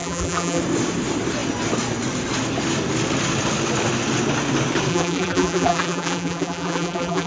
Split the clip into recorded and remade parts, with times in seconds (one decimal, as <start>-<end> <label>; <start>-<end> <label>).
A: 0.0-0.6 remade; 0.6-4.9 recorded; 4.9-7.3 remade